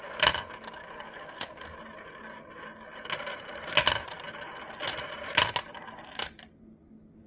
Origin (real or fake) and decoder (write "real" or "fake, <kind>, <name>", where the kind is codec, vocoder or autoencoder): real